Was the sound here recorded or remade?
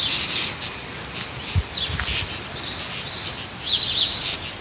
recorded